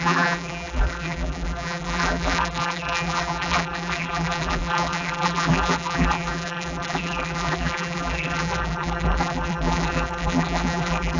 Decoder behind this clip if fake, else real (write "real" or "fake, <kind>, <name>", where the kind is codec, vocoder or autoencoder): fake, vocoder, BigVGAN v2